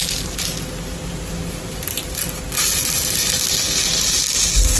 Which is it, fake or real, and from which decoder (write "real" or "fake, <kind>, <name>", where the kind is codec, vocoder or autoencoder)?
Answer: real